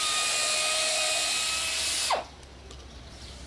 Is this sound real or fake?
real